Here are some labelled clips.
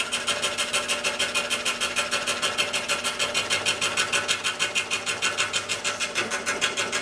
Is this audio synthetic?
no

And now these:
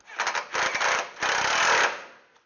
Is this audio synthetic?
no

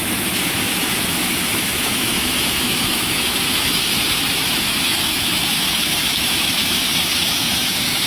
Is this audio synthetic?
yes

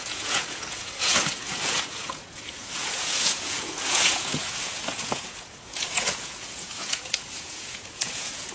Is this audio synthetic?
yes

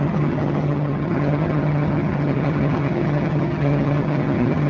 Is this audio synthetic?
yes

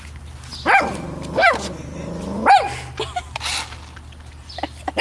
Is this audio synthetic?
no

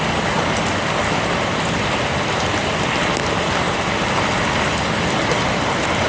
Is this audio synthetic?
no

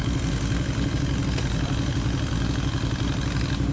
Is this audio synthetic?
no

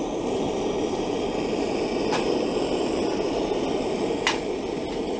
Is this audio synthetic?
no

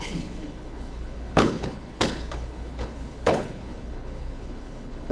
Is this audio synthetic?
yes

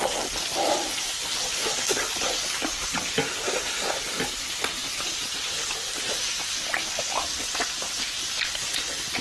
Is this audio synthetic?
no